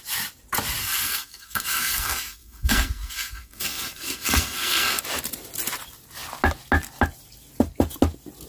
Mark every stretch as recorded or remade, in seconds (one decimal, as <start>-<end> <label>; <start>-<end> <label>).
0.0-0.8 recorded; 0.8-5.0 remade; 5.0-8.5 recorded